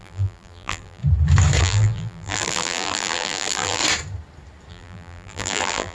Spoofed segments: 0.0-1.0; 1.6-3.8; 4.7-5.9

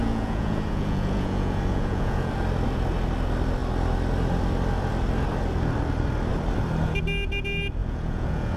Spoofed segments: 0.0-2.3; 7.8-8.6

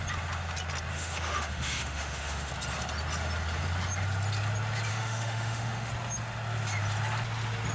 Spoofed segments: 0.9-2.5; 4.9-5.9

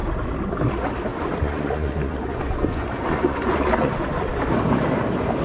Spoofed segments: 1.1-4.3

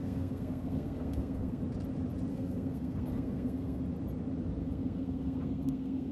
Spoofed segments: 0.0-1.6; 2.3-3.8; 4.6-6.1

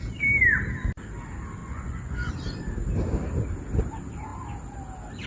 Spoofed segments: 1.6-2.3

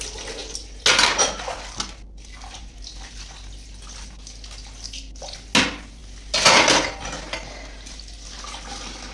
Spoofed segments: none

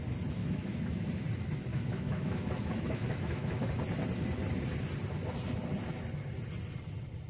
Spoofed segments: 0.4-1.1; 1.7-3.6